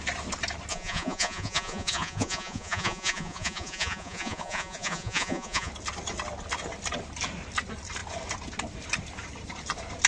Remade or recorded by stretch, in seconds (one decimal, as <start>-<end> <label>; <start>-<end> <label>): 0.0-0.7 recorded; 0.7-5.7 remade; 5.7-10.1 recorded